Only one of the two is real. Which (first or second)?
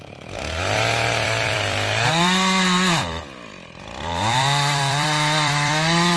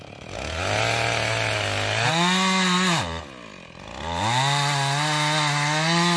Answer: second